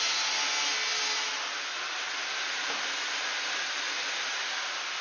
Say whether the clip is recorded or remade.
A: recorded